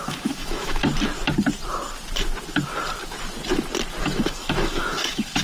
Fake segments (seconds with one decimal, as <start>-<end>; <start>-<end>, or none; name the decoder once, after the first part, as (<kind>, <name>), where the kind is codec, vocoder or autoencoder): 0.0-0.8 (autoencoder, DAC-VAE); 4.0-5.4